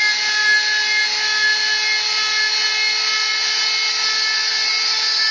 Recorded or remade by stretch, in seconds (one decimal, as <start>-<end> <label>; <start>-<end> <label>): 0.0-5.3 recorded